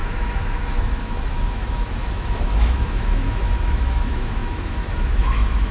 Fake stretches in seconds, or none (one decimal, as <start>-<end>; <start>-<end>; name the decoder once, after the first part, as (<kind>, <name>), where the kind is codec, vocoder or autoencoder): 0.0-5.7 (autoencoder, DAC-VAE)